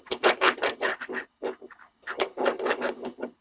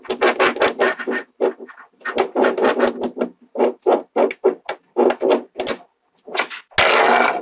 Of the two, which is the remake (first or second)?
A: first